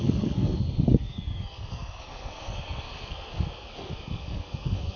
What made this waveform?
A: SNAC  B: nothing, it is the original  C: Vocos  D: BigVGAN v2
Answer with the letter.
A